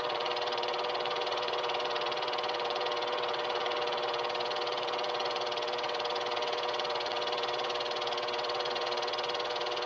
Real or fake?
fake